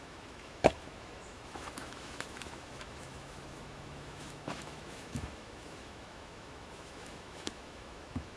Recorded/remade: remade